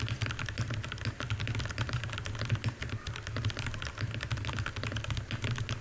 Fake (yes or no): no